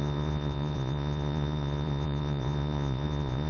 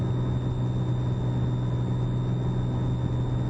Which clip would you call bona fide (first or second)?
second